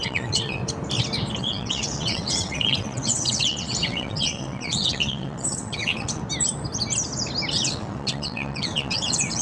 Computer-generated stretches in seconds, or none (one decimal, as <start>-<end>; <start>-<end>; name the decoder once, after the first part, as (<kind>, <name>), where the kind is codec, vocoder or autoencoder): 0.0-0.6 (vocoder, WaveNeXt); 1.4-6.2; 7.5-9.4